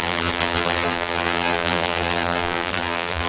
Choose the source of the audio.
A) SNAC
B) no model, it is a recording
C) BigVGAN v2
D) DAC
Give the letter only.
C